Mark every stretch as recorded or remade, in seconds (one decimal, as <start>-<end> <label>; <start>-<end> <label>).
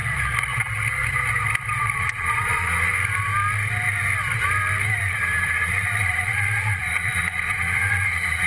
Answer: 0.0-2.0 recorded; 2.0-2.9 remade; 2.9-5.0 recorded; 5.0-8.5 remade